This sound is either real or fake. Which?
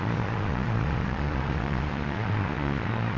fake